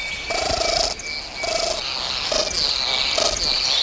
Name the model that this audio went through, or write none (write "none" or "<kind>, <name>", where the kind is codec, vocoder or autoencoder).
none